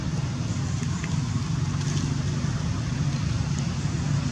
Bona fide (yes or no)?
yes